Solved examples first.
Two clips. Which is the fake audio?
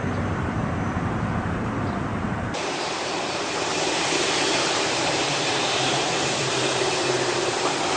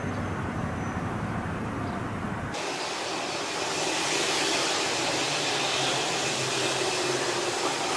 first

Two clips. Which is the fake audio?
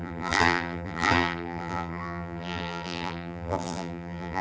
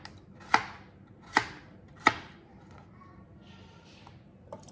first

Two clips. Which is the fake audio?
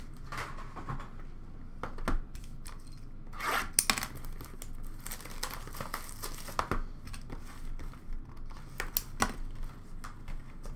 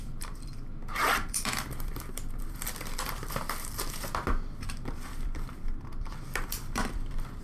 second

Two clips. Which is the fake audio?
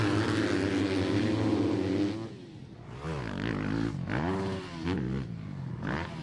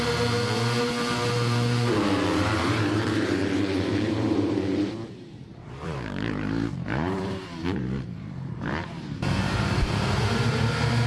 second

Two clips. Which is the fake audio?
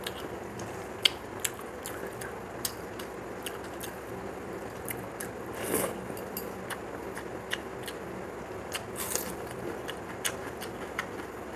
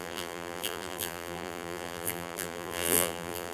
second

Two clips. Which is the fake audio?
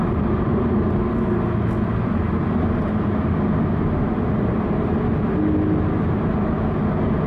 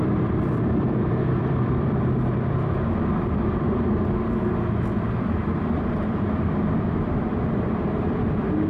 second